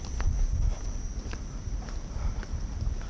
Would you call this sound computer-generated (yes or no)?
no